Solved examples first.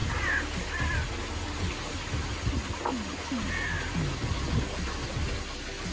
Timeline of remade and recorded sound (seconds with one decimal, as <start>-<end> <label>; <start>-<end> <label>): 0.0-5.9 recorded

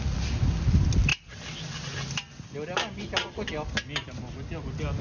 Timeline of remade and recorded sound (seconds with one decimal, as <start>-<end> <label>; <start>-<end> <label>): 0.0-5.0 recorded

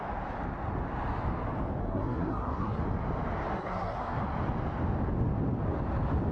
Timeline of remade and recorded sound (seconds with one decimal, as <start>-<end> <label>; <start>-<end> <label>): 0.0-1.8 recorded; 1.8-2.8 remade; 2.8-3.5 recorded; 3.5-4.2 remade; 4.2-6.3 recorded

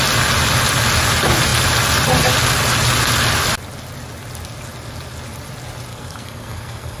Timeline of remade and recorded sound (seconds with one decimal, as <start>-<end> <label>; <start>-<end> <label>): 0.0-5.9 recorded; 5.9-7.0 remade

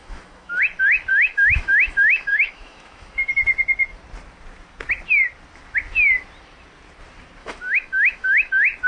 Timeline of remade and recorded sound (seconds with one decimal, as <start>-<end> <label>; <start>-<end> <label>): 0.0-0.6 remade; 0.6-1.1 recorded; 1.1-3.3 remade; 3.3-7.4 recorded; 7.4-8.5 remade; 8.5-8.9 recorded